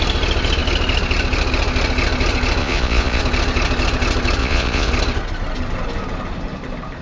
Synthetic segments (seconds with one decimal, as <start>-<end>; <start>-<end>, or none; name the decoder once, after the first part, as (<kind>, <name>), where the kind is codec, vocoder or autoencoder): 2.6-3.2 (vocoder, Vocos); 4.4-4.9